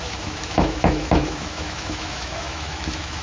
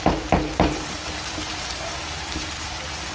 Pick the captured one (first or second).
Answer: second